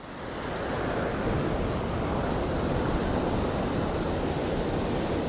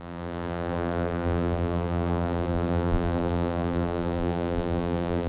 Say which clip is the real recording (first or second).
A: first